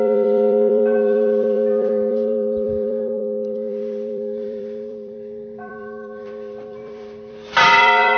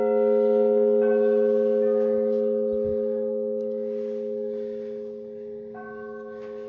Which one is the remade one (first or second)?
first